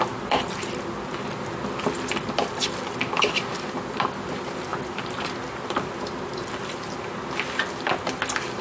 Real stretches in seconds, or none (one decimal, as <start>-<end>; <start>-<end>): 0.0-8.6